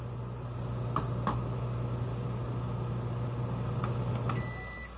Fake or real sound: real